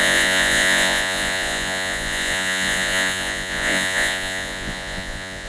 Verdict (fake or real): fake